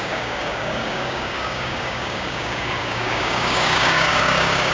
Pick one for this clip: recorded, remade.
remade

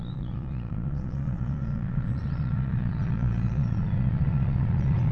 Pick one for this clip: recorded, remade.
remade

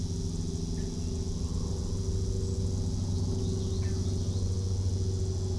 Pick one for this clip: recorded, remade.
recorded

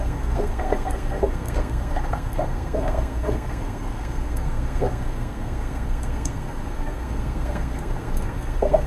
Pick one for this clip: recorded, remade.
remade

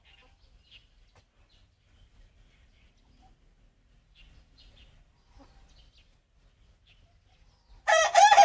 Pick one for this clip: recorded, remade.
recorded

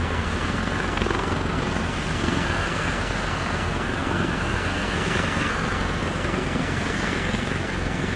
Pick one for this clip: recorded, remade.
remade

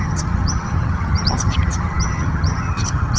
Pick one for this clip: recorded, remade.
remade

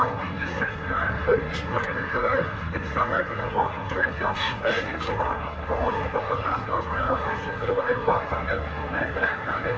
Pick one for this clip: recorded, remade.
remade